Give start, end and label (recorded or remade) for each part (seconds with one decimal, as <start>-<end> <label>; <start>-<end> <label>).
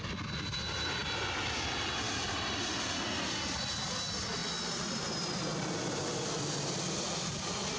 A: 0.0-7.8 recorded